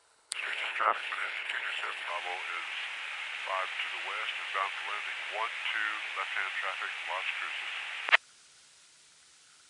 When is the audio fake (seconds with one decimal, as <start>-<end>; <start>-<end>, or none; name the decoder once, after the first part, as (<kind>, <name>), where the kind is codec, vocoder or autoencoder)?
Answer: 0.0-2.1 (codec, HILCodec)